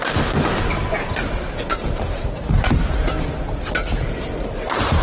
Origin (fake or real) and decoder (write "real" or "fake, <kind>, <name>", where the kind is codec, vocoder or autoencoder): real